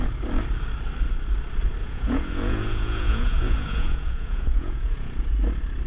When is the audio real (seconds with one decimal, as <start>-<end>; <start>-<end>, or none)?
0.0-1.8; 5.3-5.9